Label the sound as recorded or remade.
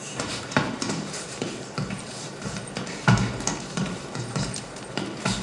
remade